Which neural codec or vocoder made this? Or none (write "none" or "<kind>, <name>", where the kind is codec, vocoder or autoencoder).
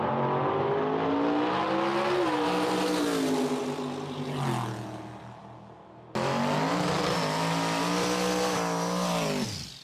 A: none